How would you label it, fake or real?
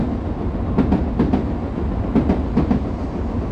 real